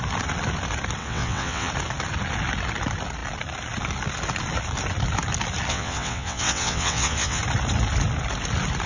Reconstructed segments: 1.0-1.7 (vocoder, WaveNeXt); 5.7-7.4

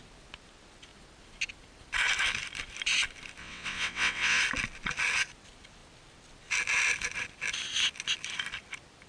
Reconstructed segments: 3.4-4.4 (vocoder, WaveNeXt)

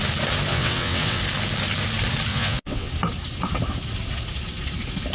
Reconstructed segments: 0.5-1.2 (vocoder, WaveNeXt); 2.3-2.9